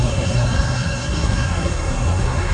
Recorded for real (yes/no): no